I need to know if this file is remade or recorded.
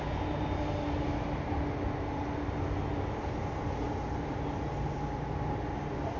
recorded